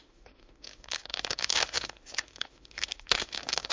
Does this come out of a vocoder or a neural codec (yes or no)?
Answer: yes